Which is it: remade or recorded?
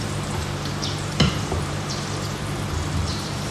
remade